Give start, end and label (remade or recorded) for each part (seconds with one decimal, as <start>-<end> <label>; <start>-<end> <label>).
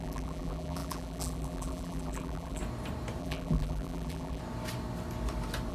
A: 0.0-2.6 remade; 2.6-3.2 recorded; 3.2-4.4 remade; 4.4-5.7 recorded